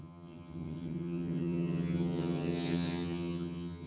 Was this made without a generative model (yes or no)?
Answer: no